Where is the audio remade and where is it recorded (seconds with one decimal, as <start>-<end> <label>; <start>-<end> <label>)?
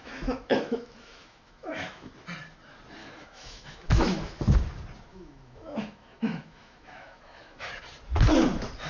0.0-2.1 remade; 2.1-3.0 recorded; 3.0-4.4 remade; 4.4-5.1 recorded; 5.1-7.7 remade; 7.7-8.9 recorded